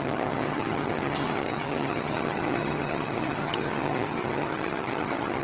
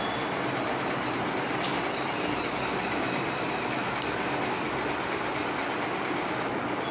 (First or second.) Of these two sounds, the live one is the second